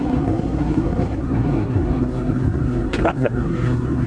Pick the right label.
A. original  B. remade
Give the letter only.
B